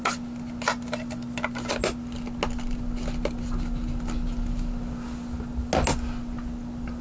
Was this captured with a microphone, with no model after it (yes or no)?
yes